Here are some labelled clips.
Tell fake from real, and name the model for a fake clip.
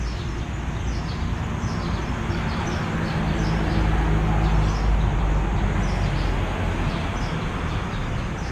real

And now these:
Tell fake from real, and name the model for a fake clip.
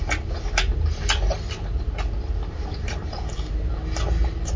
real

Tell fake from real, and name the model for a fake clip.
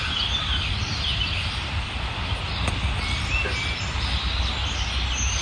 real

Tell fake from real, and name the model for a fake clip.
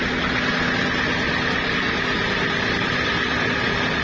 real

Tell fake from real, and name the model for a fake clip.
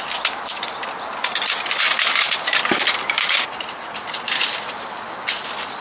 real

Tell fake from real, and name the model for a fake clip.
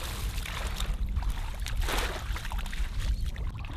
real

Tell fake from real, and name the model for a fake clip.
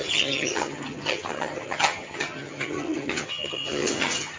fake, vocoder, HiFi-GAN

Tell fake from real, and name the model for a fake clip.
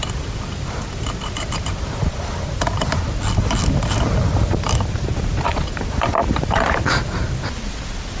fake, vocoder, BigVGAN v2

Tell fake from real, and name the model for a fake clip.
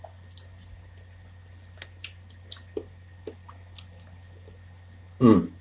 real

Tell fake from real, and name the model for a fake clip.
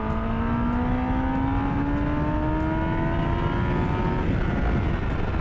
real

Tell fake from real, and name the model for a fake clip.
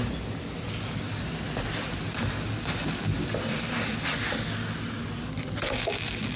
real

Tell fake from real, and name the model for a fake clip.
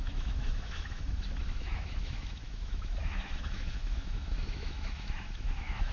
fake, autoencoder, DAC-VAE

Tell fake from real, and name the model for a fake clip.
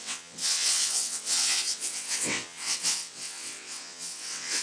fake, vocoder, WaveNeXt